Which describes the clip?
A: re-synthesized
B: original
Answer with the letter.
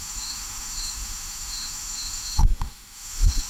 A